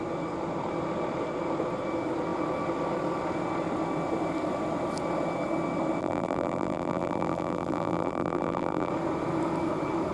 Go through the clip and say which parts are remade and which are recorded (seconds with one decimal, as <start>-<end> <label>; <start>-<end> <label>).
0.0-6.0 recorded; 6.0-8.9 remade; 8.9-10.1 recorded